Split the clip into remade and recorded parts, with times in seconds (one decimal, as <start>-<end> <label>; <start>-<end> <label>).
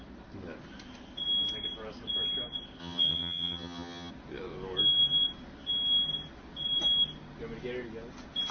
0.0-2.8 recorded; 2.8-4.1 remade; 4.1-8.5 recorded